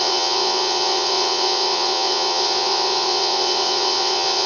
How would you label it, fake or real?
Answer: fake